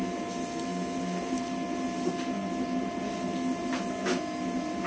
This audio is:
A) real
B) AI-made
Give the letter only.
A